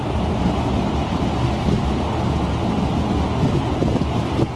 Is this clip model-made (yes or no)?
no